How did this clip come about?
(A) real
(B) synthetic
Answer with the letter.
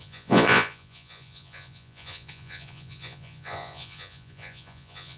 B